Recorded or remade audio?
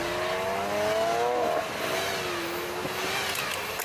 recorded